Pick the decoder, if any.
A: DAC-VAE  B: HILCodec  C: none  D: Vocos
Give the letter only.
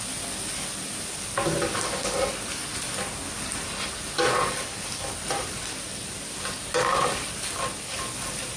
C